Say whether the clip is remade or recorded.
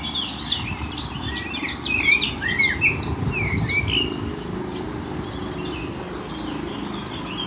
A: recorded